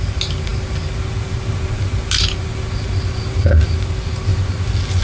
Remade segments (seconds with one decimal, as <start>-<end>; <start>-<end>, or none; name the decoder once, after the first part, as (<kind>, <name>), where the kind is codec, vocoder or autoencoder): none